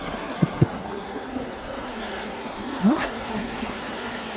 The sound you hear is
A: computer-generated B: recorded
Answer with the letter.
A